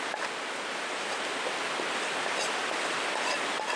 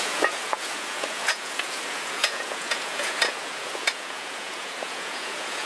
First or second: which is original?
first